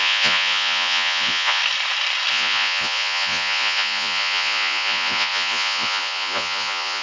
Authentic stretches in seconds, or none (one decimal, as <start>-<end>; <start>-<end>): 1.6-2.3